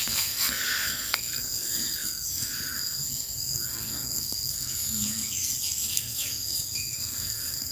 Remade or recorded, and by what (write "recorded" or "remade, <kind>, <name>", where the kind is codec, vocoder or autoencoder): remade, codec, SNAC